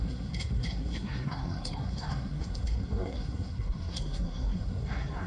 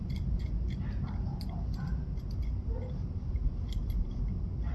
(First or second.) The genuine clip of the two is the second